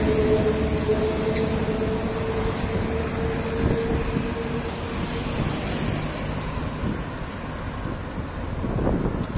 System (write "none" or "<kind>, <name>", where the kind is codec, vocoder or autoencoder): none